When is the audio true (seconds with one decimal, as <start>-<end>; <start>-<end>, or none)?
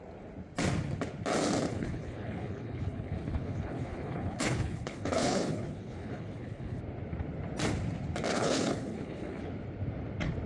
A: 0.0-1.7; 6.8-8.3; 9.5-10.5